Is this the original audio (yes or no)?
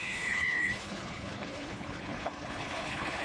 no